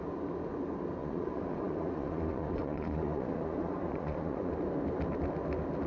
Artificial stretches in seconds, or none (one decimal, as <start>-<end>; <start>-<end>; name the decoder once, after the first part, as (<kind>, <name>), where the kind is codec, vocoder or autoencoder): 1.0-4.5 (vocoder, Vocos)